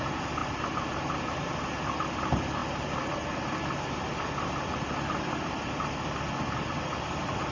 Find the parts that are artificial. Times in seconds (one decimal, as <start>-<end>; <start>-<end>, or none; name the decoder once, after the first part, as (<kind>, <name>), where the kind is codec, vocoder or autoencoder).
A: none